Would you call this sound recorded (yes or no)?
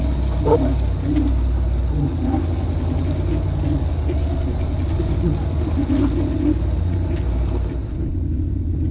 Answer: yes